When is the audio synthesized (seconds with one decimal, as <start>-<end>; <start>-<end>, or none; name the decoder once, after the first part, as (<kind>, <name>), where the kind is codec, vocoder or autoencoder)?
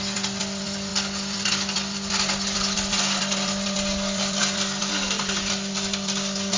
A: none